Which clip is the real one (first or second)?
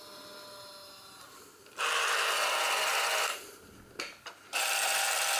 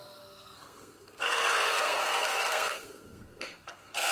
first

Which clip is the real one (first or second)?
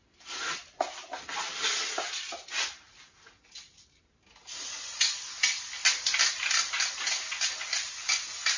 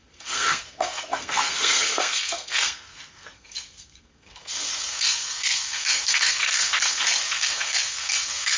first